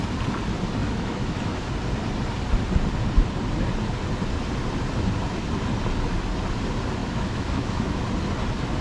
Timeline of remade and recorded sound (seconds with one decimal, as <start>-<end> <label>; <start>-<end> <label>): 0.0-0.8 recorded; 0.8-1.7 remade; 1.7-7.0 recorded; 7.0-8.0 remade; 8.0-8.8 recorded